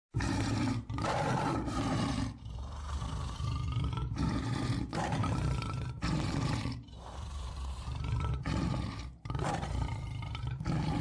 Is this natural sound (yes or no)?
no